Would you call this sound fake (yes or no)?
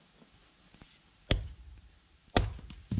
no